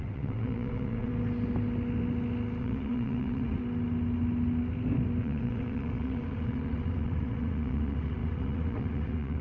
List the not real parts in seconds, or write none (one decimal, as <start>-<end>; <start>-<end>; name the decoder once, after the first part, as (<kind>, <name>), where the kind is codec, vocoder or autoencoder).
0.0-1.1 (vocoder, WaveNeXt); 2.6-3.6; 5.2-9.4